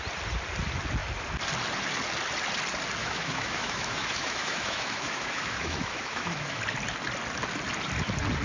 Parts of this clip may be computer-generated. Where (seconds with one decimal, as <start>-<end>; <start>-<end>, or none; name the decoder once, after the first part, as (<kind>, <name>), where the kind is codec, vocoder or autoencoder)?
3.0-6.6 (autoencoder, DAC-VAE)